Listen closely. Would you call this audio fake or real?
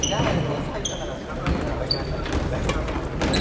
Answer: real